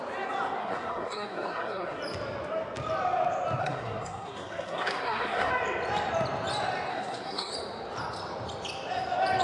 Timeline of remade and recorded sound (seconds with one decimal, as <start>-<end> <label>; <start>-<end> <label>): 0.0-0.6 recorded; 0.6-2.0 remade; 2.0-3.6 recorded; 3.6-5.5 remade; 5.5-6.9 recorded; 6.9-7.5 remade; 7.5-9.4 recorded